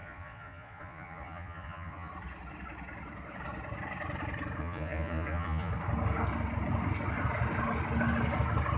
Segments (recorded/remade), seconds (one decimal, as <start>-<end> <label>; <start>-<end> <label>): 0.0-2.1 remade; 2.1-4.6 recorded; 4.6-5.7 remade; 5.7-8.8 recorded